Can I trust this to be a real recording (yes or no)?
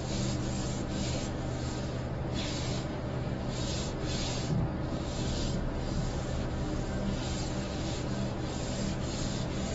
yes